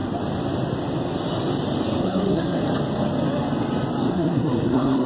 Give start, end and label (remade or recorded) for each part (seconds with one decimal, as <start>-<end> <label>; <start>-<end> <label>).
0.0-2.0 recorded; 2.0-2.6 remade; 2.6-4.1 recorded; 4.1-5.1 remade